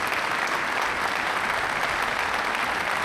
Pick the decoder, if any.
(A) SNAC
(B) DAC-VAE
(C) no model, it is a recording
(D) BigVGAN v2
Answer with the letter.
C